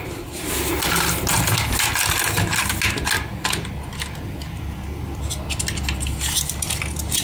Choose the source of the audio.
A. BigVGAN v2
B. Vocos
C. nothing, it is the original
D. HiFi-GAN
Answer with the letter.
C